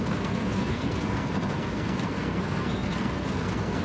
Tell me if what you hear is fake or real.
fake